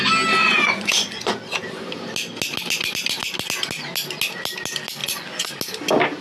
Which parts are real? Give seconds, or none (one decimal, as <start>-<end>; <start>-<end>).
0.0-0.4; 1.4-5.0; 5.5-6.2